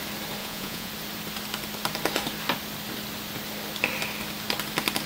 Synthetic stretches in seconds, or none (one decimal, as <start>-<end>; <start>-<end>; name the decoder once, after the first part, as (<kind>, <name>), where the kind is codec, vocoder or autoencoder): 0.4-0.9 (vocoder, Vocos)